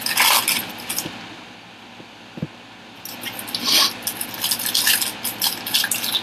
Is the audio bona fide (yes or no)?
yes